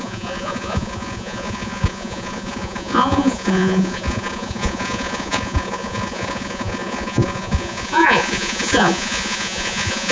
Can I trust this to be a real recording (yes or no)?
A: no